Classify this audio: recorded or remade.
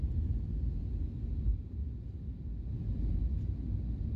recorded